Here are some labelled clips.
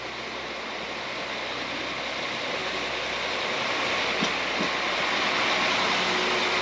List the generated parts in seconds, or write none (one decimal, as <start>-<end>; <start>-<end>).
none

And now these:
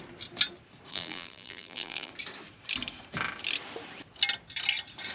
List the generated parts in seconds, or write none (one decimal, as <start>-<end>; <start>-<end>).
0.9-2.1

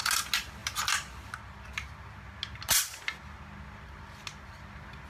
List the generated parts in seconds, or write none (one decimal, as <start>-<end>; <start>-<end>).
none

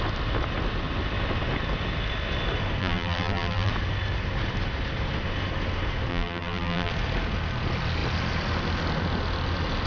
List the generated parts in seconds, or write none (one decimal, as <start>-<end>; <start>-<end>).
2.8-3.7; 6.1-6.9

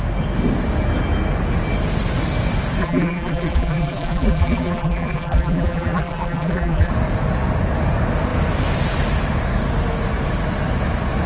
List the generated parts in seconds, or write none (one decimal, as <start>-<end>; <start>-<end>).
2.8-6.9

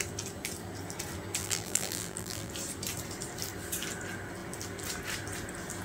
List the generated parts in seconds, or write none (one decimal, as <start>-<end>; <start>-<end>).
1.4-2.5

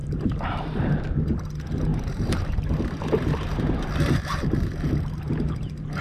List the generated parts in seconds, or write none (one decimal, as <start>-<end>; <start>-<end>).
0.0-1.0; 1.9-4.9